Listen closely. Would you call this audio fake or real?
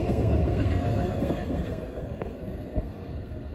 fake